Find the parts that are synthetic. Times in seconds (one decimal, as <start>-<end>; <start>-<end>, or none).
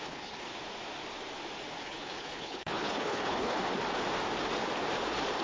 0.0-0.5; 1.8-3.6